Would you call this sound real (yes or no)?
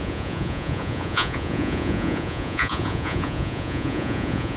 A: no